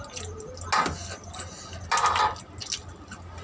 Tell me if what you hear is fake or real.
real